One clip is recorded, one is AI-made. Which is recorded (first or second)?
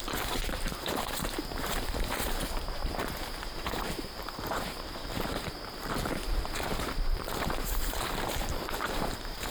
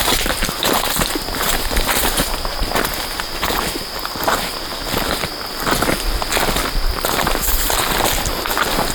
second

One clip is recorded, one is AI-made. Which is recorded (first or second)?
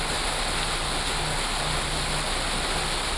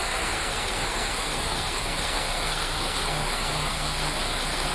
first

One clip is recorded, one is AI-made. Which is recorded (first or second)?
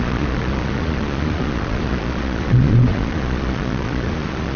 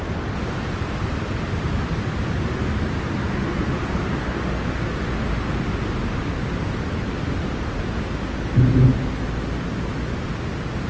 second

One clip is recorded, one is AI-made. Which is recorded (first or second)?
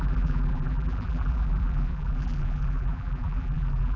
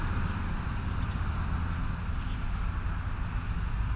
second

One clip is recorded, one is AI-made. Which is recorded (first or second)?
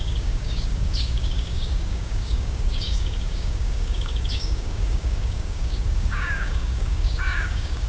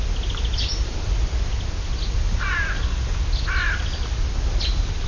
second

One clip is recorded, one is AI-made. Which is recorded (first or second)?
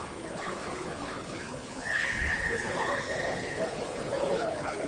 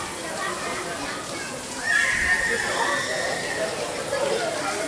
second